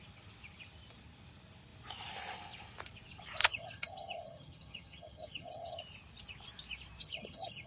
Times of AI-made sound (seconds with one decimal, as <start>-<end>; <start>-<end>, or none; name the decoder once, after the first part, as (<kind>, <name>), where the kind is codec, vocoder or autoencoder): 3.4-5.8 (vocoder, HiFi-GAN); 7.0-7.7